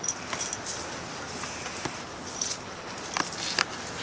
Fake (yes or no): no